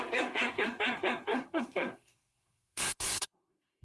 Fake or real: fake